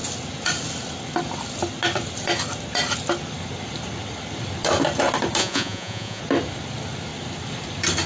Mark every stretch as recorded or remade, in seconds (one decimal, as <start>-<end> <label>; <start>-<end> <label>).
0.0-5.4 recorded; 5.4-6.2 remade; 6.2-8.1 recorded